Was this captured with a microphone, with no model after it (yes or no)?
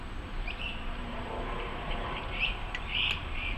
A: no